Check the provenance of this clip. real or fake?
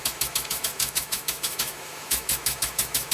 fake